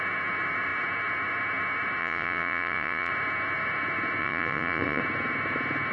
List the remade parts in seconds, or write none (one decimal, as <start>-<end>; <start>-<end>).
2.0-3.1; 4.2-5.0